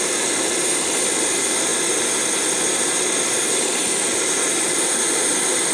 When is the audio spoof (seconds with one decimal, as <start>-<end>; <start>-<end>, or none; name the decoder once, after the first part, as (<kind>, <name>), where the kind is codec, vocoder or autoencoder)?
none